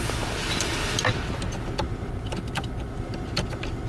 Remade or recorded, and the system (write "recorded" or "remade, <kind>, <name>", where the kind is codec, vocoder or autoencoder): recorded